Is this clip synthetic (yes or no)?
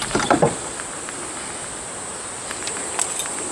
no